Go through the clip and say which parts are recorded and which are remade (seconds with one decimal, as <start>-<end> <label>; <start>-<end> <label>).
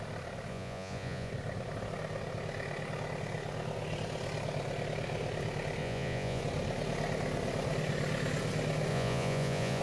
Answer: 0.0-0.5 recorded; 0.5-1.3 remade; 1.3-5.8 recorded; 5.8-6.4 remade; 6.4-8.9 recorded; 8.9-9.8 remade